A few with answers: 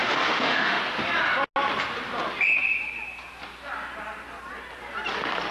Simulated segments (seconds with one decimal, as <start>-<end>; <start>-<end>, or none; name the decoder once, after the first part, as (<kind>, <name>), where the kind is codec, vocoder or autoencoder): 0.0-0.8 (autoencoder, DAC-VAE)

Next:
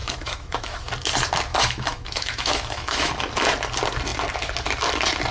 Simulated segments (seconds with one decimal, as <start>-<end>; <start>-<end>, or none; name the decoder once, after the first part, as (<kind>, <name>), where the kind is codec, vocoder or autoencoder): 0.0-0.9 (autoencoder, DAC-VAE); 1.5-3.1

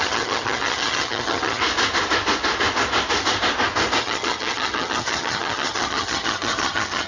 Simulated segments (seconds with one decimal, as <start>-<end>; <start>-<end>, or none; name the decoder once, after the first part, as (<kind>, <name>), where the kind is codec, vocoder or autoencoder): 0.0-1.6 (vocoder, HiFi-GAN); 4.0-7.1

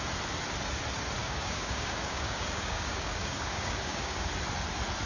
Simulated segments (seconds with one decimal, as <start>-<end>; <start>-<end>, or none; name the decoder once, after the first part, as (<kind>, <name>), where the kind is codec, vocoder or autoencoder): 1.2-4.3 (codec, DAC)

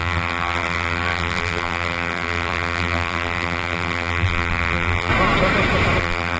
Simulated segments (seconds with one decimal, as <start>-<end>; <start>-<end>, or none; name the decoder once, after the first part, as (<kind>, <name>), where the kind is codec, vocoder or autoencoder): 0.0-5.1 (vocoder, BigVGAN v2); 6.0-6.4